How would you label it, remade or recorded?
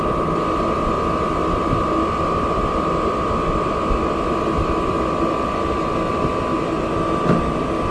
recorded